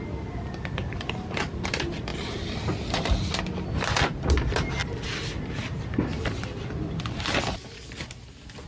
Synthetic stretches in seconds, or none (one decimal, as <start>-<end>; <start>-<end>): 0.8-1.7; 2.1-3.4